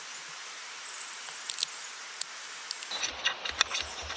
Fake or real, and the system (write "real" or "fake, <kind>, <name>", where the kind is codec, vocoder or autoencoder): real